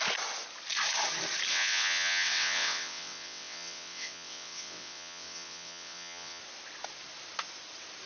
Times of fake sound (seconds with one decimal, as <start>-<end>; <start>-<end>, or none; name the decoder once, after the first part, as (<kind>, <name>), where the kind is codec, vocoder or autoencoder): 1.5-6.4 (vocoder, WaveNeXt)